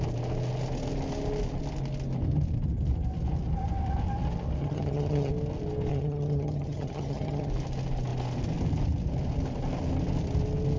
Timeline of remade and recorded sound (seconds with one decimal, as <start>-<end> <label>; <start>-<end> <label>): 0.0-4.6 recorded; 4.6-5.3 remade; 5.3-5.9 recorded; 5.9-7.5 remade; 7.5-10.8 recorded